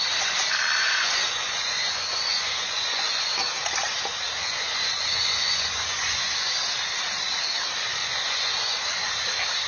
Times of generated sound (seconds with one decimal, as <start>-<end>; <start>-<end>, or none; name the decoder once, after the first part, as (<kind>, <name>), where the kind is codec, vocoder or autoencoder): 0.8-3.3 (vocoder, Vocos); 4.4-6.5; 8.0-9.1